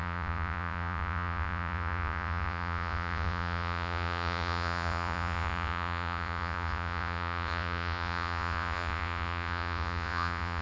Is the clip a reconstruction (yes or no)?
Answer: yes